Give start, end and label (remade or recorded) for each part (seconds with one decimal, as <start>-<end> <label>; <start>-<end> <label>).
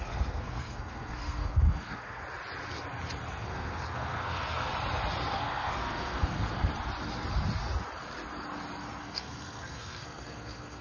0.0-2.2 remade; 2.2-3.4 recorded; 3.4-4.7 remade; 4.7-5.3 recorded; 5.3-6.7 remade; 6.7-9.0 recorded; 9.0-10.8 remade